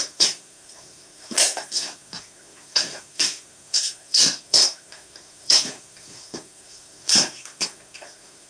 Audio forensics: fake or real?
fake